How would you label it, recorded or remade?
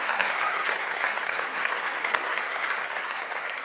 remade